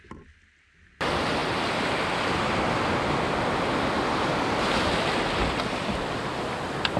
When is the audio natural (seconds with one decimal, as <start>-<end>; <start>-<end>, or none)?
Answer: 0.0-7.0